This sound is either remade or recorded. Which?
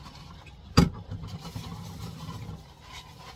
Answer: recorded